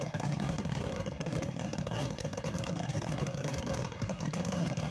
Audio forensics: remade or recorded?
remade